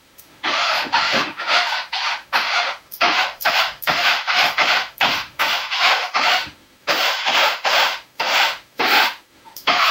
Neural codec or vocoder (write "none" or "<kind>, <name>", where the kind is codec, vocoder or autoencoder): autoencoder, DAC-VAE